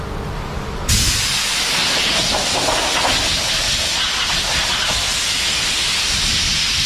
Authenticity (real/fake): real